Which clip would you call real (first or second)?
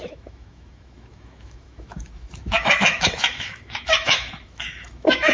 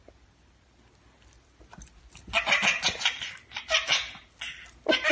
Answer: second